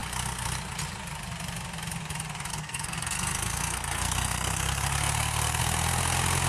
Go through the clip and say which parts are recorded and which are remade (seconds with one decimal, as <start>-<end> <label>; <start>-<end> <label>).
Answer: 0.0-2.5 recorded; 2.5-5.6 remade; 5.6-6.5 recorded